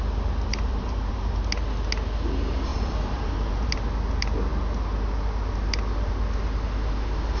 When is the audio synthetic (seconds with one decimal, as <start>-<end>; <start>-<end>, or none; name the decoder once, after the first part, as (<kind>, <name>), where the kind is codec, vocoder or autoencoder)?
0.5-1.4 (vocoder, BigVGAN v2); 2.7-3.7